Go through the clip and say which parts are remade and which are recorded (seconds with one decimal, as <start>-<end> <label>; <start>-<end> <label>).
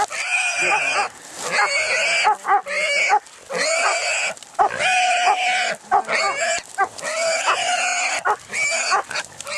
0.0-9.6 recorded